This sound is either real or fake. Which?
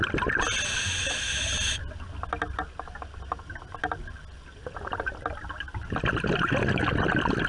real